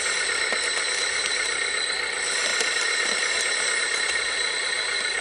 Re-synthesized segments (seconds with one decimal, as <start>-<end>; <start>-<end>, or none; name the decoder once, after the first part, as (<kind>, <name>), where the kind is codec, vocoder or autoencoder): none